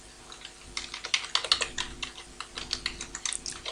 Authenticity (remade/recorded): recorded